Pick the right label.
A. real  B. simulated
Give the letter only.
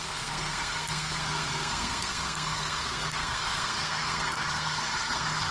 B